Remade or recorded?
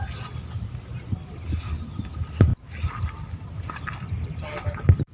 recorded